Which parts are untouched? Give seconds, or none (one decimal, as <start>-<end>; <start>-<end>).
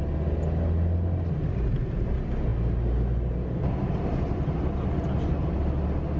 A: 0.0-6.2